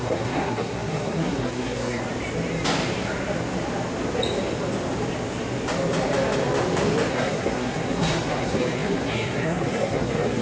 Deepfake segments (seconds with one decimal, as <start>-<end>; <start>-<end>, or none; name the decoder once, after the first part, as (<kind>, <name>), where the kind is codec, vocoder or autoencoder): 0.0-2.0 (codec, SNAC); 7.1-10.4

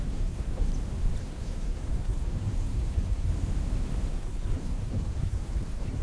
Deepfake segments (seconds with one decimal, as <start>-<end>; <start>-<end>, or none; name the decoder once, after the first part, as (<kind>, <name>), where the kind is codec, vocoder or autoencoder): 0.0-0.7 (codec, SNAC); 1.2-3.3; 4.1-6.0

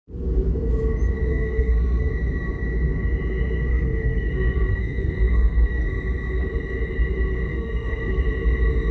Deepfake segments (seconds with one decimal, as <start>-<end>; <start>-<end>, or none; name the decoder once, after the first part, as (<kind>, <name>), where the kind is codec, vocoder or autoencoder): 1.3-2.1 (codec, SNAC); 3.7-5.8; 7.5-8.2